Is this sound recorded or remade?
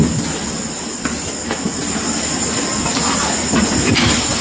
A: recorded